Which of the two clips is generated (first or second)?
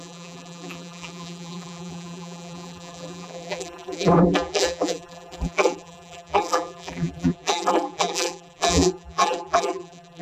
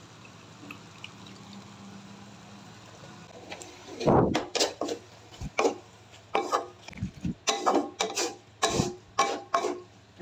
first